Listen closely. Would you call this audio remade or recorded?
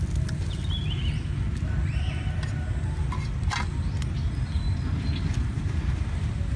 recorded